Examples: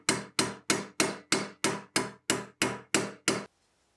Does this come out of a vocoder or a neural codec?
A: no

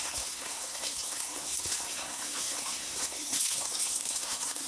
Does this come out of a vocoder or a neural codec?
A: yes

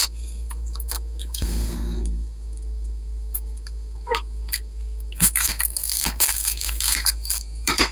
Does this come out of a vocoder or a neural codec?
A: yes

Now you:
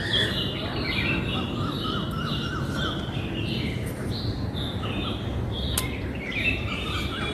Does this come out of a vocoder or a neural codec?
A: no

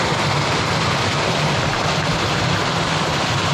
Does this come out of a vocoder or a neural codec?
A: no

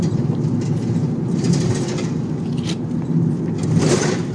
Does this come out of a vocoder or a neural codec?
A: no